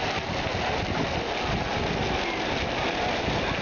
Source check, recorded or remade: recorded